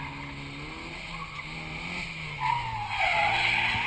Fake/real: real